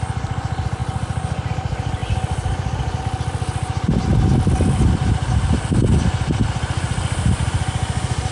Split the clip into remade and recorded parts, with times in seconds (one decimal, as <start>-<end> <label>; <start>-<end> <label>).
0.0-8.3 recorded